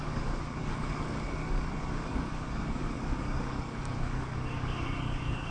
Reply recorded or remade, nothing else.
remade